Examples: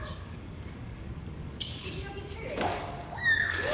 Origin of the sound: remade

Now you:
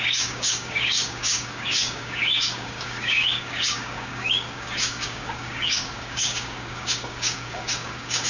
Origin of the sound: remade